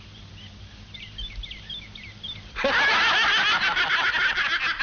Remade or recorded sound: recorded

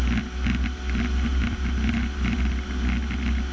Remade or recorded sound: recorded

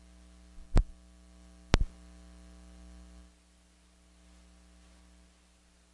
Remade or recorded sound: recorded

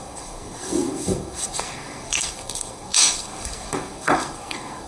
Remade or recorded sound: remade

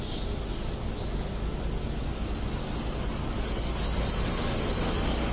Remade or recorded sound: recorded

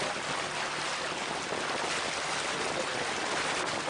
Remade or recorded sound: recorded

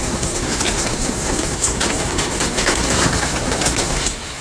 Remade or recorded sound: remade